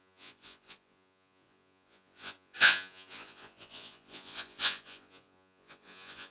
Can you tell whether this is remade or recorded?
remade